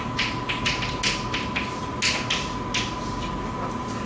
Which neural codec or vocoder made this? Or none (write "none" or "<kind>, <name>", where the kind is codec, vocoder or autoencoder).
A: none